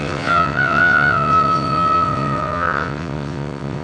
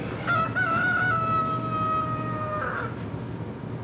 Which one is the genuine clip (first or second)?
second